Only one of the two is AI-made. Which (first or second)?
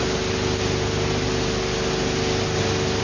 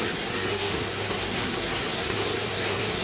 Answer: second